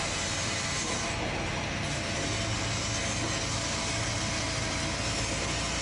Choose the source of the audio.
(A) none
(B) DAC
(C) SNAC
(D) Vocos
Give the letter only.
A